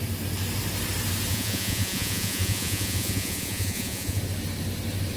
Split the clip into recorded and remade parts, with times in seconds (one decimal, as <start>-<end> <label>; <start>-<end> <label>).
0.0-1.3 recorded; 1.3-4.2 remade; 4.2-5.2 recorded

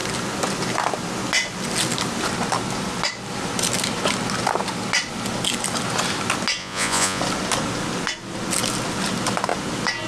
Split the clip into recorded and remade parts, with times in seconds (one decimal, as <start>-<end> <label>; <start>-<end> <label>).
0.0-6.6 recorded; 6.6-7.2 remade; 7.2-10.1 recorded

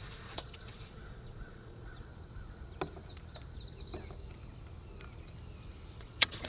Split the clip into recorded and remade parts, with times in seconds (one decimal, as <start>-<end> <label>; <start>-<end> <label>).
0.0-2.1 remade; 2.1-6.0 recorded; 6.0-6.5 remade

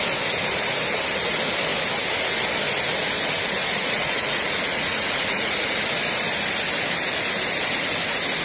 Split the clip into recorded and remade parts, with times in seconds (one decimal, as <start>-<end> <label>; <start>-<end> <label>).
0.0-3.6 recorded; 3.6-5.8 remade; 5.8-8.4 recorded

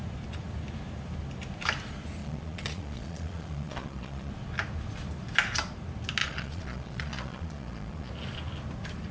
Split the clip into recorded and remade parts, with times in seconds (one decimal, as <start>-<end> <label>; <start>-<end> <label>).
0.0-2.2 recorded; 2.2-4.3 remade; 4.3-6.2 recorded; 6.2-8.1 remade; 8.1-9.1 recorded

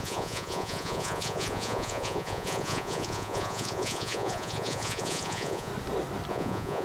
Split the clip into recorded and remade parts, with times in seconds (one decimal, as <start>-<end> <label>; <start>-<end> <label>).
0.0-5.7 remade; 5.7-6.3 recorded; 6.3-6.8 remade